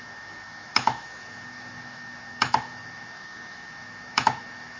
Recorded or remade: remade